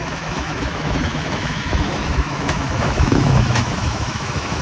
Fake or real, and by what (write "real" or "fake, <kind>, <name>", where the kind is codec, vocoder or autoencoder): fake, autoencoder, DAC-VAE